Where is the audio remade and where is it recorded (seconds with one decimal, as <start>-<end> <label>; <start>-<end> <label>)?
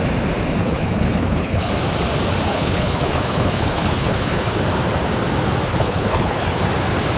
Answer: 0.0-0.6 recorded; 0.6-1.7 remade; 1.7-2.5 recorded; 2.5-4.6 remade; 4.6-5.7 recorded; 5.7-6.6 remade; 6.6-7.2 recorded